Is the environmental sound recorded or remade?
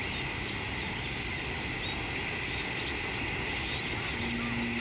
recorded